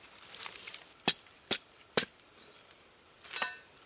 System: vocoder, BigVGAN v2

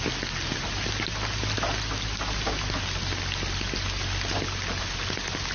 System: none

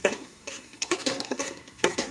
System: codec, SNAC